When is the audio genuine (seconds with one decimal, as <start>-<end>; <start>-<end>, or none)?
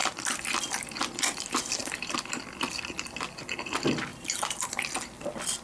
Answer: 0.0-1.8; 2.4-4.1; 4.8-5.6